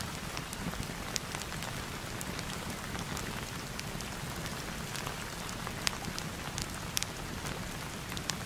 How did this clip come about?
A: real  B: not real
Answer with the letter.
A